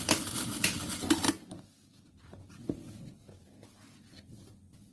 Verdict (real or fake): real